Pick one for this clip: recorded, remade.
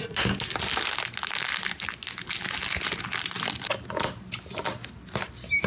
recorded